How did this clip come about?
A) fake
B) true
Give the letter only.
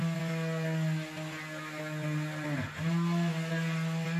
B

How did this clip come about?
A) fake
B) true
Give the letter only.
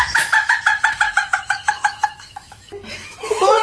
A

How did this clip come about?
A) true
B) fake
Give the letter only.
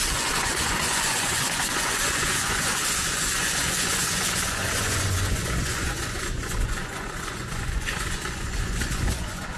B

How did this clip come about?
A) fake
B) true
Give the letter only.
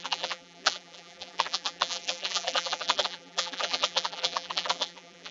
A